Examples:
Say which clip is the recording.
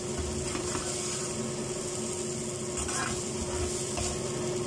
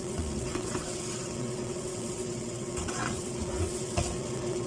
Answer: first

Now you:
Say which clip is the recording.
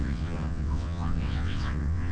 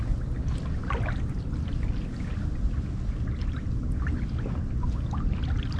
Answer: second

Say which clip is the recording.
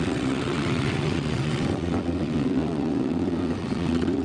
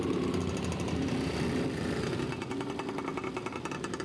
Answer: second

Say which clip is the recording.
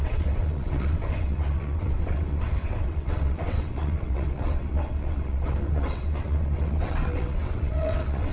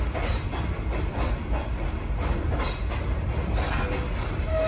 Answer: second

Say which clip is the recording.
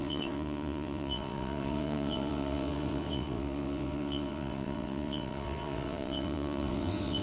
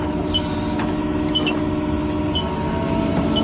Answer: second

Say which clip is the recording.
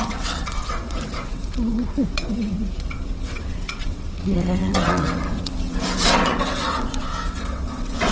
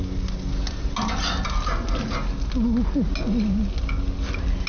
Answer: second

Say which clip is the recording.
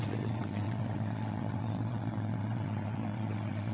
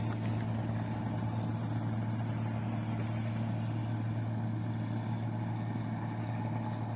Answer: second